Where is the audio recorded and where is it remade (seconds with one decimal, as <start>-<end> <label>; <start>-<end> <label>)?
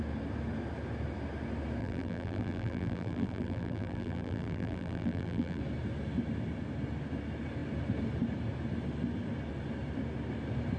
0.0-1.8 recorded; 1.8-5.6 remade; 5.6-10.8 recorded